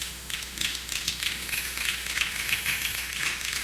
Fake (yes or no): yes